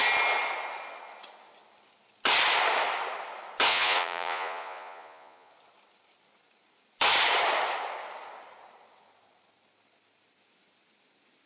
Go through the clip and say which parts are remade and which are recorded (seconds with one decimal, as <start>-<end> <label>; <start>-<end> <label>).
0.0-3.7 recorded; 3.7-5.5 remade; 5.5-11.5 recorded